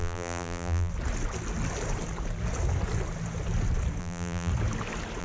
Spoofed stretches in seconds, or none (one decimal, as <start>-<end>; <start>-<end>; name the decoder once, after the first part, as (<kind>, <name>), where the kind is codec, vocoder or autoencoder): 0.0-0.9 (vocoder, BigVGAN v2); 4.0-4.5